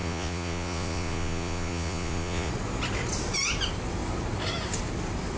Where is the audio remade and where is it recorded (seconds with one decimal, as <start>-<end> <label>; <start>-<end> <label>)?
0.0-2.5 remade; 2.5-5.4 recorded